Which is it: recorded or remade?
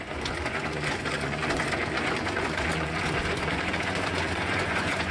remade